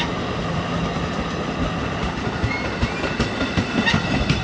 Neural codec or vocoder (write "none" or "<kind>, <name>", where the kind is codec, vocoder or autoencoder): none